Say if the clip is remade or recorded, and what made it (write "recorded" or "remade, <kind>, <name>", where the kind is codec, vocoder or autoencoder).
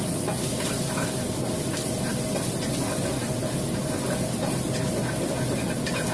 recorded